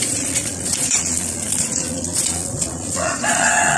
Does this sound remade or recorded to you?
remade